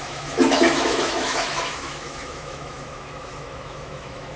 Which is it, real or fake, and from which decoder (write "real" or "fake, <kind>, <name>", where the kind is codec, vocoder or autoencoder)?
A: fake, autoencoder, DAC-VAE